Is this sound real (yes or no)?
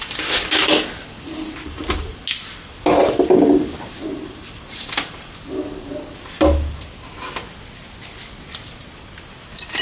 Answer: yes